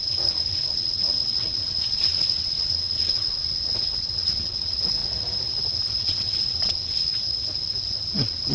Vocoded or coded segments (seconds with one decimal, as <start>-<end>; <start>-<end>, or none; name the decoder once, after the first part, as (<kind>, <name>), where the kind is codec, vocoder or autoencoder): 0.0-5.0 (vocoder, WaveNeXt); 6.0-7.1; 8.1-8.5